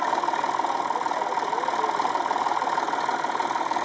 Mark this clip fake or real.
real